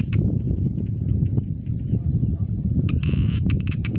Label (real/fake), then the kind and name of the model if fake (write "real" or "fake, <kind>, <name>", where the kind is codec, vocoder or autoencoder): fake, vocoder, Vocos